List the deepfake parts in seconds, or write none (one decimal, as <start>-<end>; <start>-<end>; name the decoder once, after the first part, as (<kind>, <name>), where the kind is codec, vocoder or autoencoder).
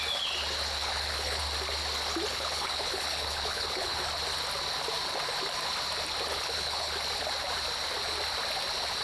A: 0.8-1.4 (codec, HILCodec); 2.3-4.0; 6.3-6.9